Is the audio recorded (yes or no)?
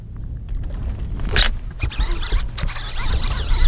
yes